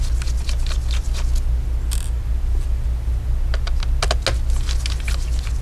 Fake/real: real